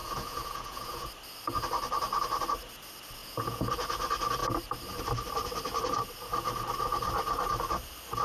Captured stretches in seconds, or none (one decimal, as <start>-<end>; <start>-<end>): 1.1-3.2; 3.7-8.2